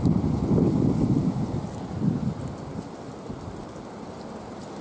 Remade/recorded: recorded